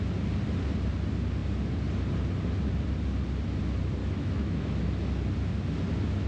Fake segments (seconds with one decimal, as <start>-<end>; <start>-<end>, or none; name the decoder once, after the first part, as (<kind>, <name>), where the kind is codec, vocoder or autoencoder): 4.0-4.9 (autoencoder, DAC-VAE)